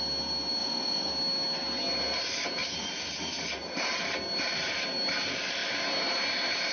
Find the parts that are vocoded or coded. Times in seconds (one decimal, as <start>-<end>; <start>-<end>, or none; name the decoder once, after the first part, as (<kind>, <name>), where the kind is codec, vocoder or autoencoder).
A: 0.6-1.1 (vocoder, Vocos)